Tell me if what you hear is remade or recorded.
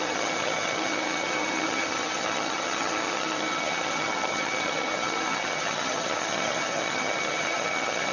remade